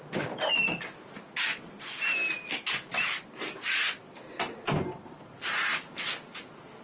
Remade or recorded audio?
recorded